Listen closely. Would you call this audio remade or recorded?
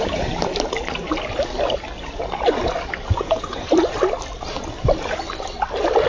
recorded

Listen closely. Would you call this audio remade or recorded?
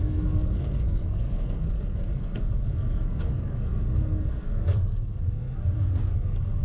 remade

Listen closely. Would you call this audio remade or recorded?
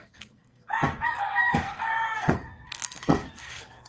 remade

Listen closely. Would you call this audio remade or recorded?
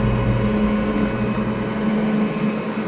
recorded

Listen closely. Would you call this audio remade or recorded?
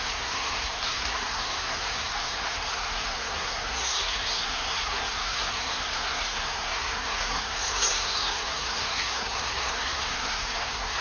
remade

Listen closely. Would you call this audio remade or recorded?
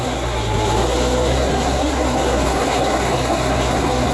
remade